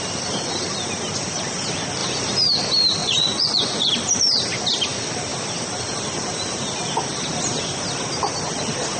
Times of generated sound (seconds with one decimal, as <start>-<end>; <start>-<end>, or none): 3.0-3.9